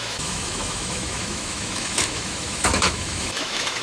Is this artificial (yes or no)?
yes